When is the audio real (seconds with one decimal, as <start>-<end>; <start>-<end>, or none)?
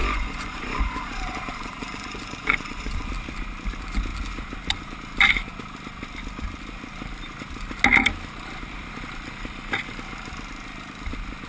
3.1-11.5